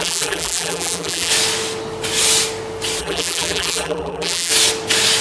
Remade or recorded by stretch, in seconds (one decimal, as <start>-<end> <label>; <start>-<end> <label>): 0.0-1.3 remade; 1.3-3.0 recorded; 3.0-4.5 remade; 4.5-5.2 recorded